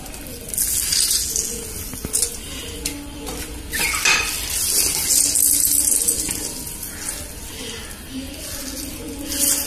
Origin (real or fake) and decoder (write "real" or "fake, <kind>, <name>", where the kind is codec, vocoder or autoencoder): real